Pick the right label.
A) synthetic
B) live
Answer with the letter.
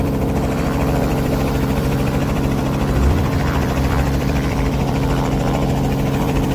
A